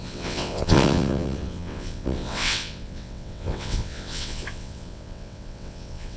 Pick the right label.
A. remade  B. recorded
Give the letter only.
A